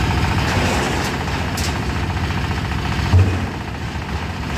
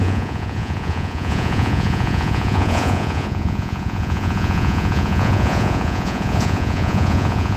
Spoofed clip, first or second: second